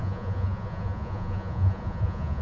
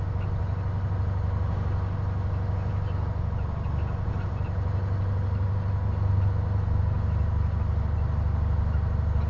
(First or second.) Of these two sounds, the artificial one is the first